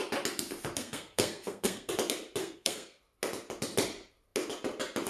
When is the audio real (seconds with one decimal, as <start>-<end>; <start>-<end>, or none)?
0.0-0.8; 1.9-2.4; 3.0-5.1